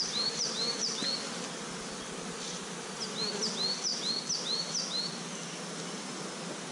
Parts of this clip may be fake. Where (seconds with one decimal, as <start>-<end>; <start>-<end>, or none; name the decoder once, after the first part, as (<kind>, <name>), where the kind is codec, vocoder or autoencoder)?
none